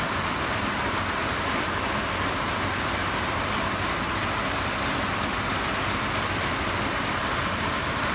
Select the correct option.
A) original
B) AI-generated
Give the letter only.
A